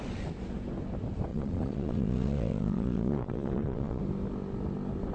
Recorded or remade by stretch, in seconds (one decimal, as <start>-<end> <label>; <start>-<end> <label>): 0.0-1.3 recorded; 1.3-4.0 remade; 4.0-5.1 recorded

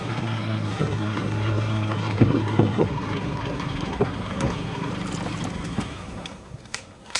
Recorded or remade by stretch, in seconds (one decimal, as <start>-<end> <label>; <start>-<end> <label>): 0.0-4.9 remade; 4.9-5.5 recorded; 5.5-7.2 remade